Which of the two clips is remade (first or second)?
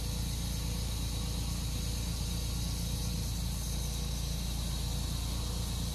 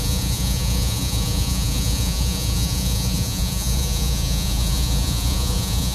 second